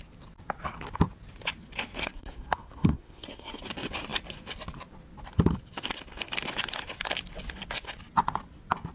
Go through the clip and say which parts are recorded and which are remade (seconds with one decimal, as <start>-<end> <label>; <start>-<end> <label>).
0.0-2.0 recorded; 2.0-3.6 remade; 3.6-8.9 recorded